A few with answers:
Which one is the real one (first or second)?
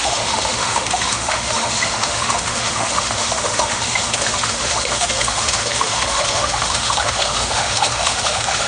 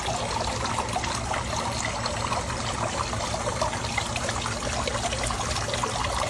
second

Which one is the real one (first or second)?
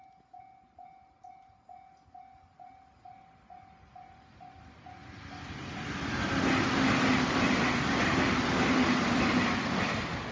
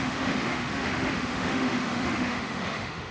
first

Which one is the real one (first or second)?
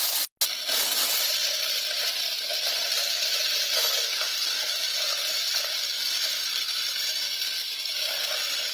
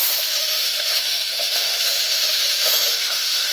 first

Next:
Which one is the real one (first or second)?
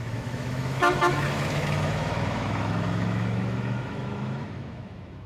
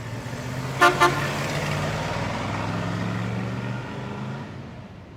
second